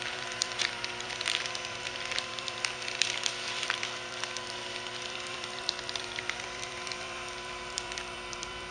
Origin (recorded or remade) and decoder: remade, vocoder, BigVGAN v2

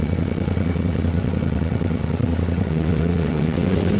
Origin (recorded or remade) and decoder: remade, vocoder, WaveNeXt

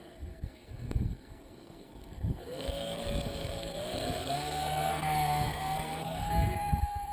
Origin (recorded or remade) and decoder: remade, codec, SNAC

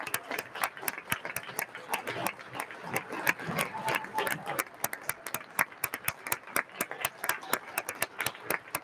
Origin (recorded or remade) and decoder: recorded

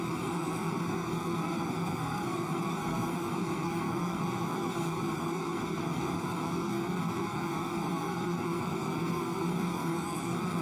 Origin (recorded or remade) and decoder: remade, codec, SNAC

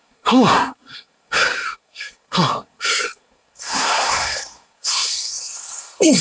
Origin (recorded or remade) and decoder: remade, codec, SNAC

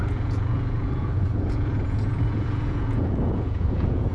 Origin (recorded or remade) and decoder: remade, vocoder, Vocos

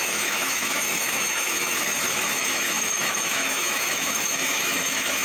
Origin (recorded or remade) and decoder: remade, autoencoder, DAC-VAE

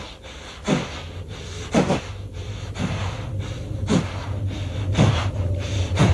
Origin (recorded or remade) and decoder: recorded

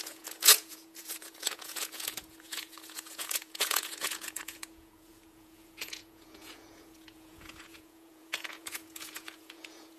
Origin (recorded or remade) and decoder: remade, vocoder, Vocos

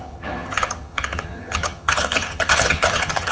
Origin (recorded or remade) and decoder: remade, vocoder, HiFi-GAN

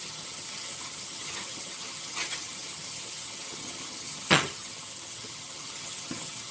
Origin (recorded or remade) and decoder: remade, vocoder, HiFi-GAN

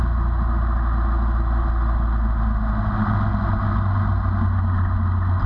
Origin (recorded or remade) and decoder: recorded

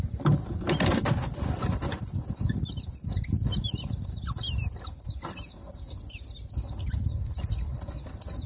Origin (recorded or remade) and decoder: recorded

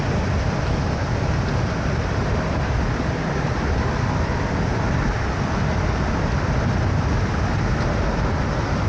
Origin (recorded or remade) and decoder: recorded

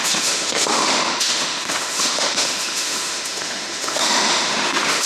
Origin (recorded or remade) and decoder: remade, autoencoder, DAC-VAE